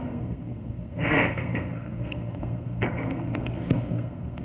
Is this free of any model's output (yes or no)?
no